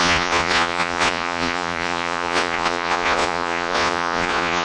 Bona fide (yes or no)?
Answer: no